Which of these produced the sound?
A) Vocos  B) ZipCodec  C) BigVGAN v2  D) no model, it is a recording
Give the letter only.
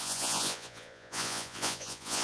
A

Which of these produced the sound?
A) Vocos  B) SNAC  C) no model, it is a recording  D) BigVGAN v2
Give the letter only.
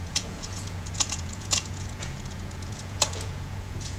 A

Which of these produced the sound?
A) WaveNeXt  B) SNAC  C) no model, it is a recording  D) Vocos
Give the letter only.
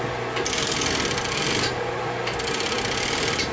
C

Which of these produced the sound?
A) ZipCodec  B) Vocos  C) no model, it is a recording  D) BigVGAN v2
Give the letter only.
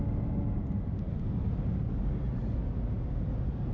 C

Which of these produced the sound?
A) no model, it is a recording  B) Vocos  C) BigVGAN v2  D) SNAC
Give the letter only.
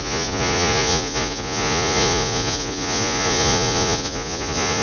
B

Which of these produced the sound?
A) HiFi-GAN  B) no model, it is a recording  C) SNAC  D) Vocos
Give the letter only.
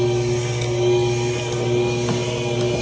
B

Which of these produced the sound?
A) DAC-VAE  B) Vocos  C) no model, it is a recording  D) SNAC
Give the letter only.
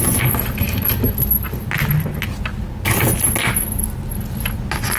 C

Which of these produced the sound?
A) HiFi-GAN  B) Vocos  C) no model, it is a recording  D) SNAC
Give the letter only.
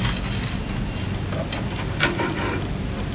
C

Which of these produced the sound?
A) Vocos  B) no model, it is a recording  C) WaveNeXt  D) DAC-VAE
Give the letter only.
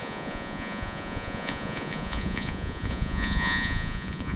A